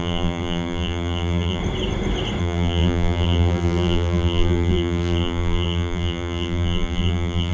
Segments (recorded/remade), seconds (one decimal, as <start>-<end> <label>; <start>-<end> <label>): 0.0-1.6 remade; 1.6-2.4 recorded; 2.4-7.5 remade